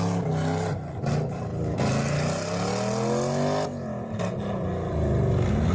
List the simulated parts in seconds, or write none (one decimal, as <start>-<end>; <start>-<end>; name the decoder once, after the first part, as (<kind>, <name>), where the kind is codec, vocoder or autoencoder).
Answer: none

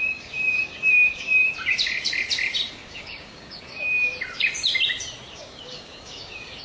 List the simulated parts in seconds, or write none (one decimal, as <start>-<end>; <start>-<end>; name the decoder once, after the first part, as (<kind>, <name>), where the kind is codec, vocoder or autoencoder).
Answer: 0.0-1.3 (codec, DAC); 2.7-4.1; 5.3-6.6

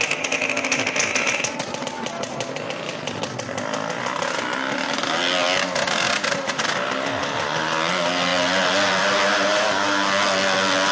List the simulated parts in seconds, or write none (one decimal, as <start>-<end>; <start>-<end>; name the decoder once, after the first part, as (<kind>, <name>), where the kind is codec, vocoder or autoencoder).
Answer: none

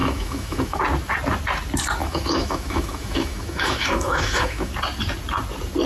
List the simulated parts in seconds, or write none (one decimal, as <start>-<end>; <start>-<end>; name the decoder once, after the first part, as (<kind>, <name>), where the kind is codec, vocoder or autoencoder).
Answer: 0.0-0.8 (autoencoder, DAC-VAE); 2.0-4.7

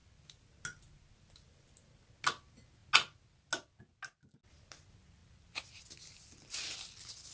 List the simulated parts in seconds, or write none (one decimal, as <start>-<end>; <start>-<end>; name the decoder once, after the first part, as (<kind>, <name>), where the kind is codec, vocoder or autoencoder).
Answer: none

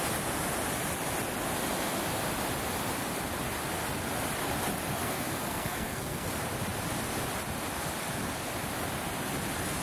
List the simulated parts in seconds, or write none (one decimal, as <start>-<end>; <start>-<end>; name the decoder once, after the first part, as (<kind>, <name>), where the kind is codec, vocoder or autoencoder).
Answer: 5.0-6.3 (codec, SNAC)

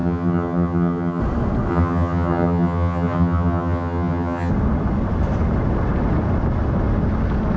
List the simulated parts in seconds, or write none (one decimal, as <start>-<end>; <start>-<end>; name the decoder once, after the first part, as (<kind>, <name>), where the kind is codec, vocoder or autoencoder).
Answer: 0.0-1.2 (vocoder, HiFi-GAN); 1.7-4.5

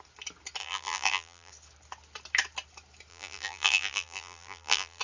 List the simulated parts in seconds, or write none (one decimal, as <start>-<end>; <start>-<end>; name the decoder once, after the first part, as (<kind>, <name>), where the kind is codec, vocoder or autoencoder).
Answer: 0.6-1.5 (vocoder, BigVGAN v2); 3.1-5.0